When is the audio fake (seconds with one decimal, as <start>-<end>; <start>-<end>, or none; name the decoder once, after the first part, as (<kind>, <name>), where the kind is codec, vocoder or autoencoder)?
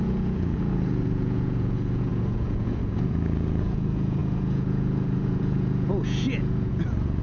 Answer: 0.0-7.2 (vocoder, Vocos)